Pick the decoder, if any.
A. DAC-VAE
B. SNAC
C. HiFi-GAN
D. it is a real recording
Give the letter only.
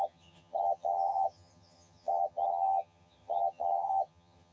C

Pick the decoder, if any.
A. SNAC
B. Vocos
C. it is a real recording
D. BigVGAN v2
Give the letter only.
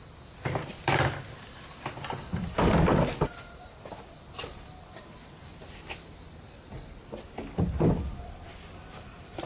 D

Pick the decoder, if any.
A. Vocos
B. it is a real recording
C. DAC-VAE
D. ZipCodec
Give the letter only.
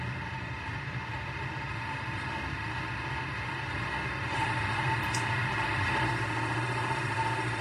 B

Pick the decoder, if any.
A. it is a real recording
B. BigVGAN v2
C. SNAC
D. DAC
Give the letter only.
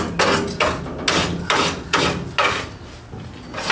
A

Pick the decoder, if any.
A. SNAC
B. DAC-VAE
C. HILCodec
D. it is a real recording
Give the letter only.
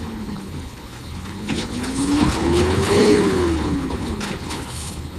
C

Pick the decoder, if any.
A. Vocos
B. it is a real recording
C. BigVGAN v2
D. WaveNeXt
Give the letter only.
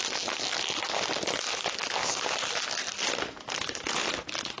B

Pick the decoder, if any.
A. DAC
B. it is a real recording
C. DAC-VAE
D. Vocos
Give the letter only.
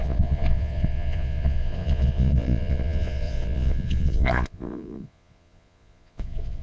D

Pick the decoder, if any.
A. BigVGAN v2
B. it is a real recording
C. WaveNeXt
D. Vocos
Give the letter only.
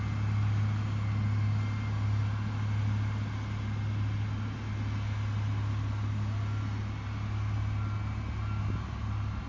B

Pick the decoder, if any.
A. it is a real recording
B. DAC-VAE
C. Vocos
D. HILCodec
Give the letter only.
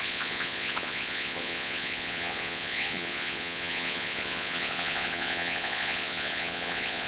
C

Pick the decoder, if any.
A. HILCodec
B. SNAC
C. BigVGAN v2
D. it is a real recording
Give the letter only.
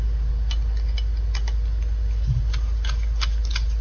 D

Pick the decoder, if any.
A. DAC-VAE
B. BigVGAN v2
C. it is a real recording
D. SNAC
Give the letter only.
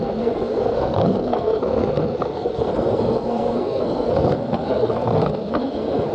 D